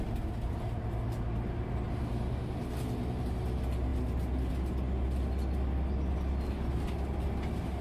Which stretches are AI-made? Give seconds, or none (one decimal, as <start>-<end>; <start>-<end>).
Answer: none

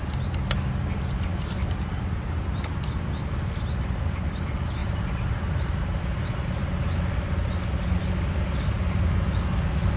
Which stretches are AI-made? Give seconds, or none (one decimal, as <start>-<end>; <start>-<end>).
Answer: 1.3-2.0; 4.8-6.8